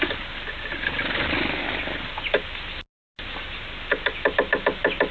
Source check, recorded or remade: recorded